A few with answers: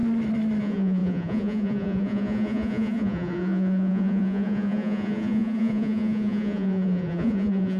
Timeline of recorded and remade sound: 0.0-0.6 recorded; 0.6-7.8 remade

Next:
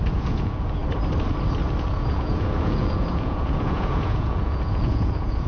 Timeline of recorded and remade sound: 0.0-0.8 remade; 0.8-1.8 recorded; 1.8-5.5 remade

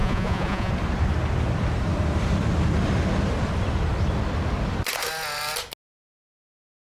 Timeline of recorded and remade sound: 0.0-0.7 remade; 0.7-6.9 recorded

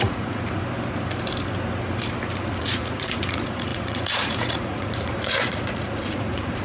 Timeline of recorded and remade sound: 0.0-0.6 remade; 0.6-2.5 recorded; 2.5-6.6 remade